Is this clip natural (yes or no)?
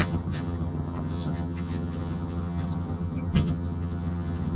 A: no